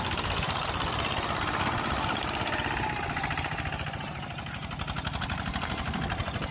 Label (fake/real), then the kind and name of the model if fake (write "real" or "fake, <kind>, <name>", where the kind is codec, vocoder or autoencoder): real